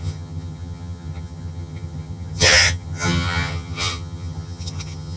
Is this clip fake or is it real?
fake